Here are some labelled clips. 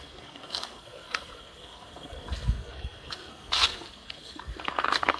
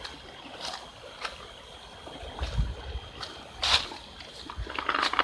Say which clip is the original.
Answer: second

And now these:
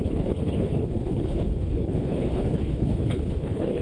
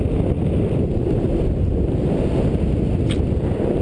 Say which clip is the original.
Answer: second